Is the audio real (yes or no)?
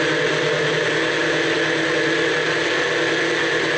yes